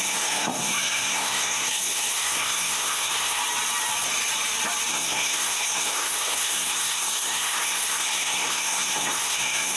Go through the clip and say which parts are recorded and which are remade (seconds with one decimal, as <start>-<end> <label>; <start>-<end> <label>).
0.0-3.4 remade; 3.4-4.9 recorded; 4.9-9.8 remade